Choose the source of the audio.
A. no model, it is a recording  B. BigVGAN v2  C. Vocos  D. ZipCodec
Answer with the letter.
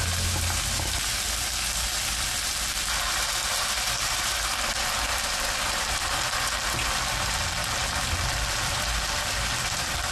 A